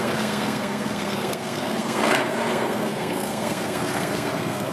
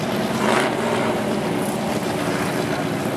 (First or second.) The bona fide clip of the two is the second